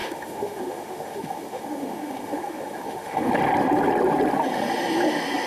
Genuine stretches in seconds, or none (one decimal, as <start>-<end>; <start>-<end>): 3.3-5.5